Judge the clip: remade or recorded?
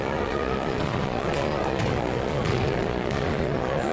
remade